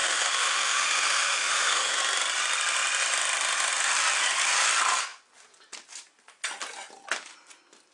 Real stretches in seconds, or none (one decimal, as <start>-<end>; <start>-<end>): 2.0-7.9